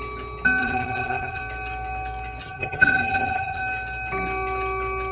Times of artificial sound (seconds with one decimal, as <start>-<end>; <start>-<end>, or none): 0.6-1.4; 2.4-3.6